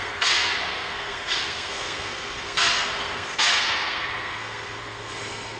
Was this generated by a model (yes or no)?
yes